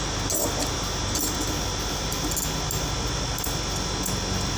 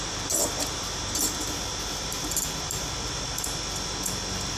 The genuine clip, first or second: first